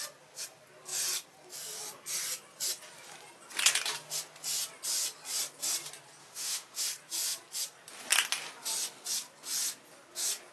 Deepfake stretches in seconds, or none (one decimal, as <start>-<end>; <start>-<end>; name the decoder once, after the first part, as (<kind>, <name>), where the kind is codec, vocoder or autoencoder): 6.2-6.8 (autoencoder, DAC-VAE)